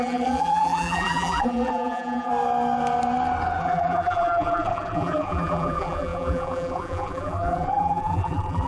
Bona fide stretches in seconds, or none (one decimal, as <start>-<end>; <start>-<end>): 2.3-3.6